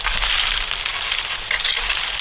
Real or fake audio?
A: real